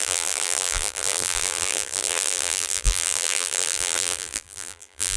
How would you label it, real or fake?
fake